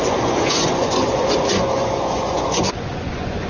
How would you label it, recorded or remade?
remade